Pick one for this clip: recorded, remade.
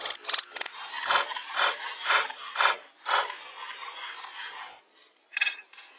recorded